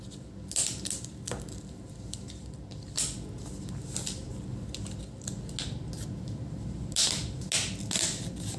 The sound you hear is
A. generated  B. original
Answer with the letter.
B